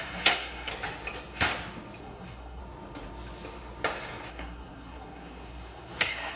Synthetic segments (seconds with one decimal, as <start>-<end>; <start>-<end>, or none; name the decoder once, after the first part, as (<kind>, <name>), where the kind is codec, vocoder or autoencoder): 0.0-0.7 (codec, SNAC); 2.0-2.6; 4.3-6.4